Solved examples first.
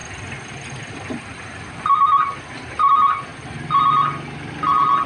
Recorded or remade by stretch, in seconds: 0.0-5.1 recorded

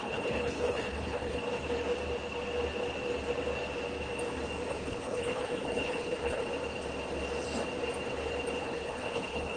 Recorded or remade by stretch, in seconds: 0.0-1.4 remade; 1.4-4.7 recorded; 4.7-6.4 remade; 6.4-8.6 recorded; 8.6-9.6 remade

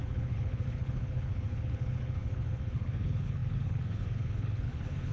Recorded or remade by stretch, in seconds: 0.0-5.1 remade